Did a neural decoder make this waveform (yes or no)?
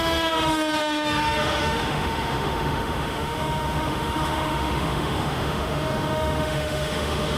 yes